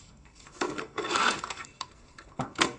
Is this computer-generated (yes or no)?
yes